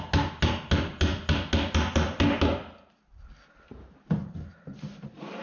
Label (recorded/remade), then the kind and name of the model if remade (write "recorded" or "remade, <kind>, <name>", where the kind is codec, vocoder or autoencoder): recorded